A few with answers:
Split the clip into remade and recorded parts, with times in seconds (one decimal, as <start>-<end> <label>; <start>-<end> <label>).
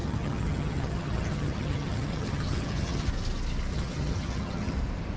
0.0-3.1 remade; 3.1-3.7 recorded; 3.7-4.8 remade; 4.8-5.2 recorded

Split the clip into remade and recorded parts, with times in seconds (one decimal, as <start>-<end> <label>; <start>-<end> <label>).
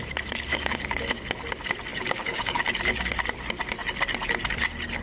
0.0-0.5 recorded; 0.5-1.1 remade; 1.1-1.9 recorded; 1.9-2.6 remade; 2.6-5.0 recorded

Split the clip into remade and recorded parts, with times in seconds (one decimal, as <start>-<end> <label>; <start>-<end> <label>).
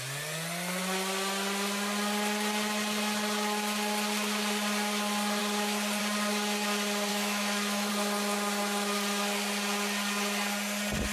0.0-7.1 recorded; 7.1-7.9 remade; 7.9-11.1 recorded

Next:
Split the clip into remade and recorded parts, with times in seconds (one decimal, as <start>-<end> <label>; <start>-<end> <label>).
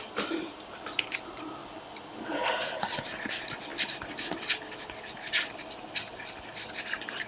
0.0-3.7 recorded; 3.7-6.7 remade; 6.7-7.3 recorded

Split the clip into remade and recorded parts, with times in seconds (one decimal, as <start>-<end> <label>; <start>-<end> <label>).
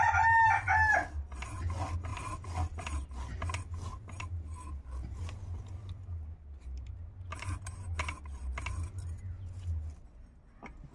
0.0-10.9 recorded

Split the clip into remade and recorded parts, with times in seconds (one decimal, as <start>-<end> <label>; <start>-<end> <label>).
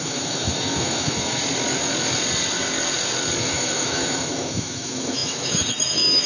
0.0-1.4 remade; 1.4-3.4 recorded; 3.4-6.3 remade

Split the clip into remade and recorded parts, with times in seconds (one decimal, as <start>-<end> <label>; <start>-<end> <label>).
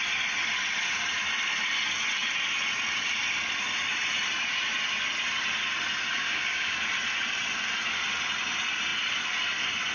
0.0-6.2 recorded; 6.2-6.7 remade; 6.7-9.9 recorded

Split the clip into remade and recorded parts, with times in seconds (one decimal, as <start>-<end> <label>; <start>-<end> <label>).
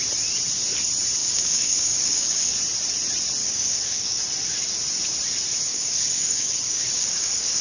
0.0-1.2 recorded; 1.2-2.5 remade; 2.5-3.4 recorded; 3.4-4.2 remade; 4.2-5.7 recorded; 5.7-7.6 remade